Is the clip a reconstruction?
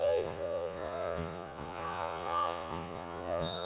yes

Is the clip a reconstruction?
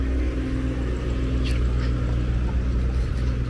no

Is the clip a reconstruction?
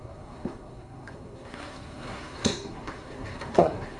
yes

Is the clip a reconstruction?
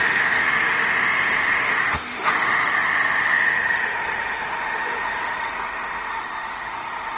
yes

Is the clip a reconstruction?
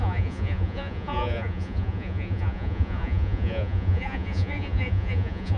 yes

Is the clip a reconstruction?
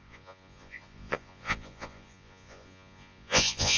yes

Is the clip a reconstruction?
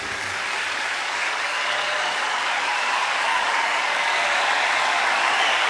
yes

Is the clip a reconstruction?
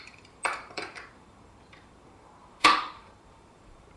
yes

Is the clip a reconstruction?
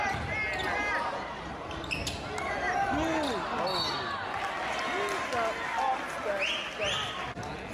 no